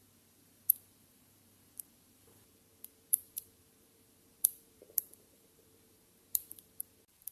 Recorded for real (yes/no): no